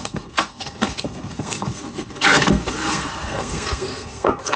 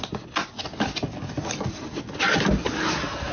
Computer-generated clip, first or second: first